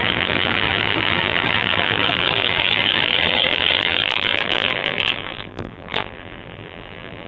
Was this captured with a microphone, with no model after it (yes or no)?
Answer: no